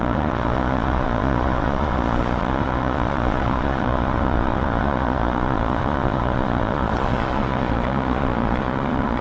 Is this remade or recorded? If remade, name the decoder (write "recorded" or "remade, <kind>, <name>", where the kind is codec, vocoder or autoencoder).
remade, vocoder, Vocos